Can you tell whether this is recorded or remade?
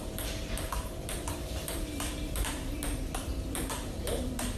remade